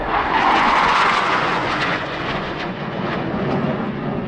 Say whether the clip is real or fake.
fake